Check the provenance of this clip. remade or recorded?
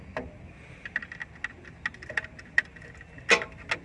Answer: recorded